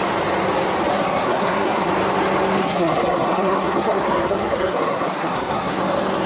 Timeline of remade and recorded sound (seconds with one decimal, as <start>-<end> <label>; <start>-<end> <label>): 0.0-0.9 recorded; 0.9-1.9 remade; 1.9-2.6 recorded; 2.6-5.8 remade; 5.8-6.3 recorded